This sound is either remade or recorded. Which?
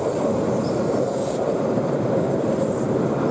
recorded